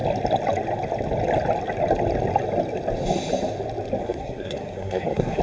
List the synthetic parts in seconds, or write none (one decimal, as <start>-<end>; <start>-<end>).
4.0-5.4